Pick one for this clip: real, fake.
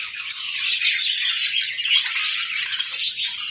real